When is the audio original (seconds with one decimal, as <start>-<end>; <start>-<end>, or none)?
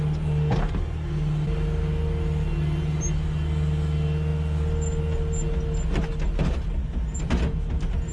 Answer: 0.0-8.1